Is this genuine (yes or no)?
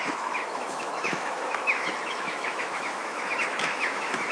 no